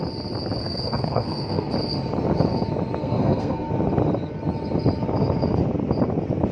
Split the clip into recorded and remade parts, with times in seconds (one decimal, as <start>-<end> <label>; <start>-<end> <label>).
0.0-0.6 recorded; 0.6-1.7 remade; 1.7-3.0 recorded; 3.0-3.7 remade; 3.7-6.5 recorded